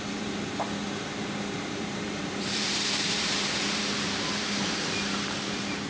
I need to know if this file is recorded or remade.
remade